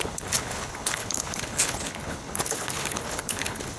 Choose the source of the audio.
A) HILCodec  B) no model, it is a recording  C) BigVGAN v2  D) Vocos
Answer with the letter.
A